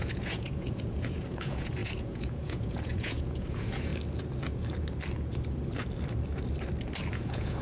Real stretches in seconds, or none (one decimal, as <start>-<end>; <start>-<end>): 3.9-7.1